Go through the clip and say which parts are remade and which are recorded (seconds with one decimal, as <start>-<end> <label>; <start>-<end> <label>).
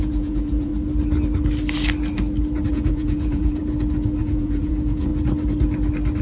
0.0-0.7 remade; 0.7-2.7 recorded; 2.7-3.6 remade; 3.6-4.2 recorded; 4.2-5.1 remade; 5.1-6.2 recorded